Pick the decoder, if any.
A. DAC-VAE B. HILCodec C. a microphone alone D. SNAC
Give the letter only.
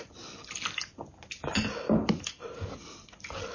C